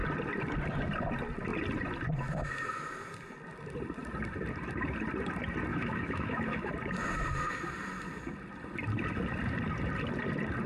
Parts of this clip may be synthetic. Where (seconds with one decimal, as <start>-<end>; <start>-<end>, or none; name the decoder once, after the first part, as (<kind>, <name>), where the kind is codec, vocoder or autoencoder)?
5.7-6.7 (autoencoder, DAC-VAE)